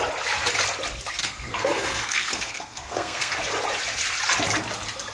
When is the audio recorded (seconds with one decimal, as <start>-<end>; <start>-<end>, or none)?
0.0-1.2; 3.3-5.1